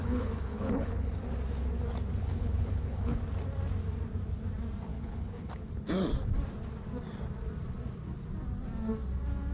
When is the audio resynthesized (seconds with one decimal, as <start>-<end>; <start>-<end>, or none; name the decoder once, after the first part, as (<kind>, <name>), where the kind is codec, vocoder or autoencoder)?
0.0-1.2 (codec, HILCodec); 2.2-3.2; 4.9-5.5